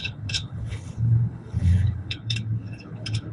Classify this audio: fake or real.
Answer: fake